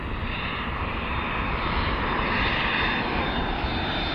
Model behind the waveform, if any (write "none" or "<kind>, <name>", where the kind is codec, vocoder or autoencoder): none